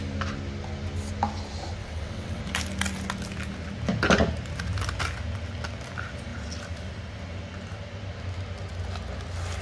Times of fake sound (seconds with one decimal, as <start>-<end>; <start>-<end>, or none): 1.8-2.4